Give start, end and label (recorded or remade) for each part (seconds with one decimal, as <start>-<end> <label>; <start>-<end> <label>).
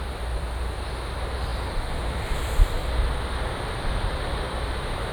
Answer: 0.0-2.8 remade; 2.8-3.7 recorded; 3.7-5.1 remade